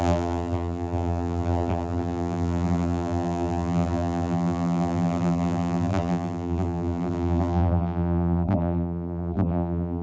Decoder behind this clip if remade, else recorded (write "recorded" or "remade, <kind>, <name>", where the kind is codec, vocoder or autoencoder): remade, vocoder, BigVGAN v2